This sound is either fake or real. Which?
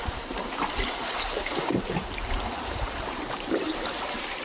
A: fake